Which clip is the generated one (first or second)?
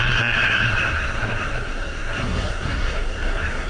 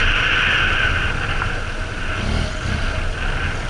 first